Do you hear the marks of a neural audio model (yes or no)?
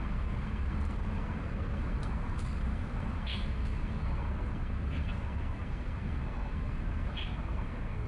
yes